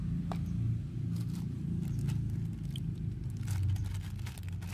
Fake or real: real